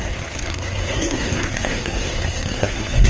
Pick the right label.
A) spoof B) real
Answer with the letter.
A